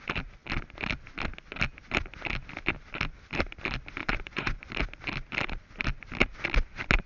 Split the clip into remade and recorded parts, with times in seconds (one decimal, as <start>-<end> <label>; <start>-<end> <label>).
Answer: 0.0-4.0 recorded; 4.0-4.7 remade; 4.7-7.1 recorded